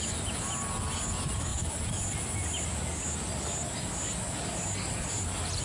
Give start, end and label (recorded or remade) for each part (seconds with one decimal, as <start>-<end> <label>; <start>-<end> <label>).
0.0-5.6 recorded

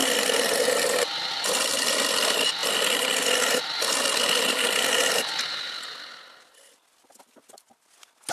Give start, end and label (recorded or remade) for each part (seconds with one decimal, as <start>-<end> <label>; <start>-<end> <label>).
0.0-8.3 recorded